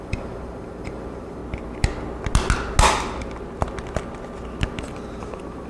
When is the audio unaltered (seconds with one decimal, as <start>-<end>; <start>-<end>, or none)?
1.4-4.8